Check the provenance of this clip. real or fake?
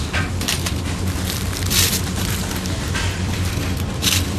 real